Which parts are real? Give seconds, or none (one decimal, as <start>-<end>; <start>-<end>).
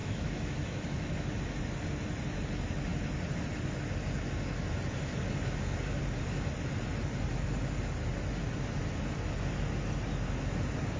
1.4-11.0